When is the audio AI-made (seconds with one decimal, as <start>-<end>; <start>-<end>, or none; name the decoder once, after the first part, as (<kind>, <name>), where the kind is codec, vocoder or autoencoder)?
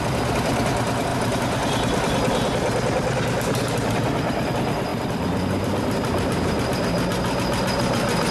none